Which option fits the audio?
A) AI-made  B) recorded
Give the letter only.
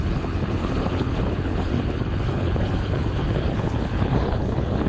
A